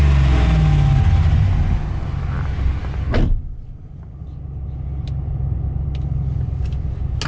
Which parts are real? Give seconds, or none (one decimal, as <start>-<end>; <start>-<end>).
0.0-7.3